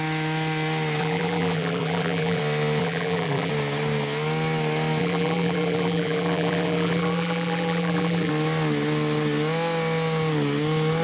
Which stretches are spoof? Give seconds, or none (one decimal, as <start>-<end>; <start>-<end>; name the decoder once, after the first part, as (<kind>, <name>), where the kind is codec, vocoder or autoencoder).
1.0-2.4 (vocoder, BigVGAN v2); 2.8-3.5; 5.0-8.3